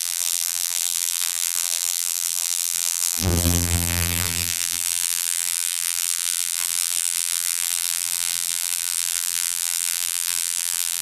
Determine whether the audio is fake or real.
fake